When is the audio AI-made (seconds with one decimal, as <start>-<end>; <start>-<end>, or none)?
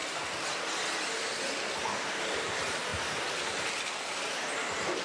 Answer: none